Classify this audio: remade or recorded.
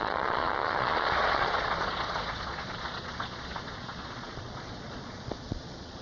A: remade